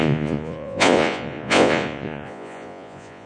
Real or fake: fake